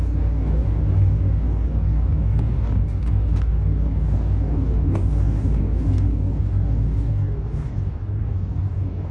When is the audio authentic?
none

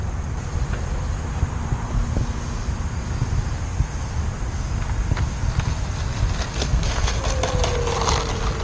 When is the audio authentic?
0.0-6.6; 7.2-8.6

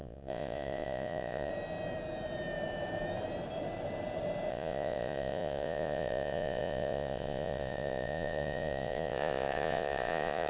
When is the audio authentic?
1.5-4.5

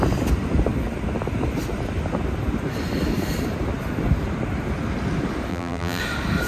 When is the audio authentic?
0.0-5.5; 6.0-6.5

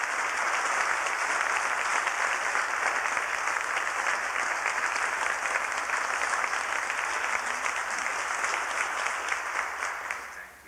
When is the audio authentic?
0.0-10.7